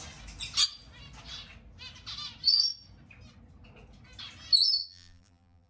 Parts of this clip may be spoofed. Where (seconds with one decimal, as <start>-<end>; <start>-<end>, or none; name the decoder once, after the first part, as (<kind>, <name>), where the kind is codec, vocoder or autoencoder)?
4.8-5.7 (vocoder, BigVGAN v2)